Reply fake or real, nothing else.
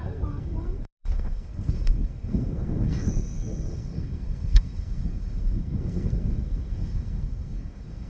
fake